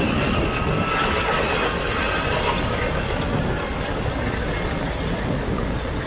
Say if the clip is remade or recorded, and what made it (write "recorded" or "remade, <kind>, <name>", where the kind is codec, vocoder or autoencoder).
recorded